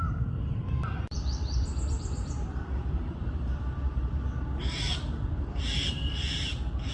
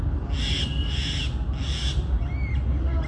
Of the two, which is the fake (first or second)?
first